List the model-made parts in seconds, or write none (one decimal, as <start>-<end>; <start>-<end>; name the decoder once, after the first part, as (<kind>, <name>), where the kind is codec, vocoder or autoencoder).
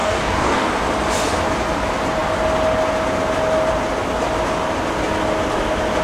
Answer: 0.0-0.7 (codec, DAC)